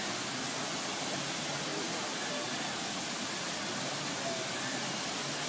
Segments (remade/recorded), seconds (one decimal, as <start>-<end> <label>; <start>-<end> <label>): 0.0-5.5 recorded